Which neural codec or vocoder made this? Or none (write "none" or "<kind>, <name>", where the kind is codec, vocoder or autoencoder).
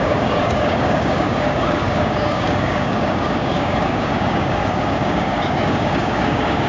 codec, DAC